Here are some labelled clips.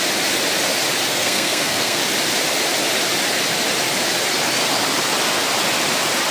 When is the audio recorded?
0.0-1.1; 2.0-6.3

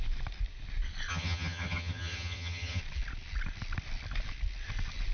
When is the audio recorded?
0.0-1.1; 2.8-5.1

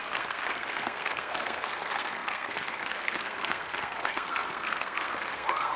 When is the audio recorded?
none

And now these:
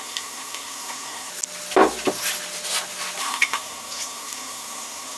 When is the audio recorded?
1.3-3.2

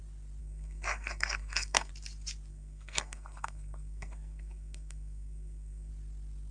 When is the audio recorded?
0.0-0.4; 1.9-2.5; 5.9-6.5

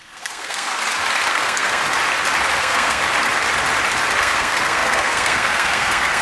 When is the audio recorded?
0.7-1.3; 1.8-2.6; 3.0-4.2